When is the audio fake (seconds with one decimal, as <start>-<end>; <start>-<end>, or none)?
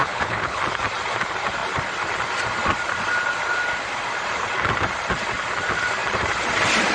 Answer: 0.0-0.6